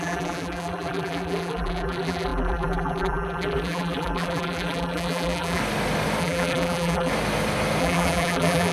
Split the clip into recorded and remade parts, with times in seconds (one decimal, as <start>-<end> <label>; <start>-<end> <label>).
0.0-5.6 remade; 5.6-6.2 recorded; 6.2-7.1 remade; 7.1-7.8 recorded; 7.8-8.7 remade